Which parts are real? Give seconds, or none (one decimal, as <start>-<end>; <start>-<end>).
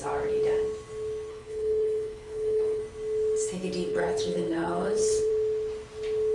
0.0-1.3; 2.8-3.9; 5.3-6.3